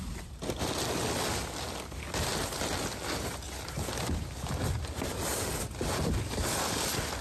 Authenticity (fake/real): real